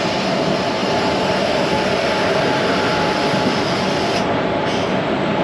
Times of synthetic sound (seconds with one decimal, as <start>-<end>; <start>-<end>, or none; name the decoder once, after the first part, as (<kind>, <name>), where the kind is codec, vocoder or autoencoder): none